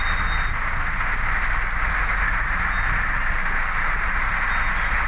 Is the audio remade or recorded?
recorded